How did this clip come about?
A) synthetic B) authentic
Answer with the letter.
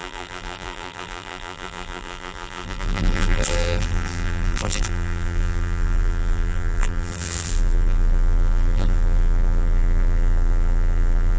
A